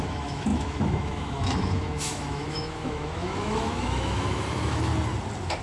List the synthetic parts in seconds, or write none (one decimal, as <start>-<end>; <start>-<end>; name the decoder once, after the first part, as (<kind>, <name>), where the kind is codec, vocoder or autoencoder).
0.0-4.9 (autoencoder, DAC-VAE)